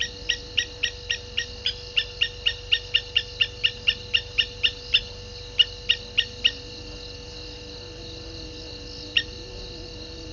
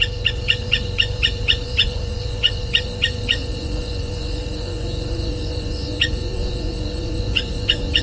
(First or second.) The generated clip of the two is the second